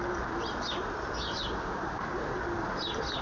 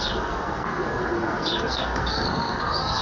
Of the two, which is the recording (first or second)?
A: first